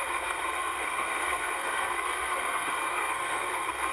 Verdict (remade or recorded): remade